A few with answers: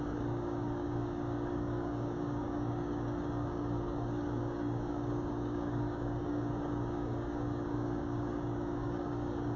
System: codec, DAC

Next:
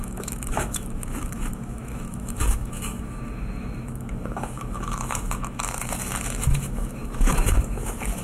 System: autoencoder, DAC-VAE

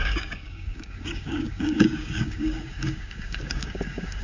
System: codec, DAC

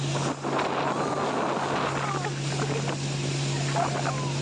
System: none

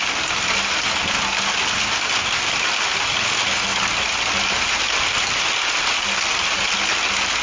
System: none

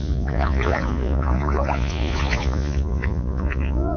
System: vocoder, Vocos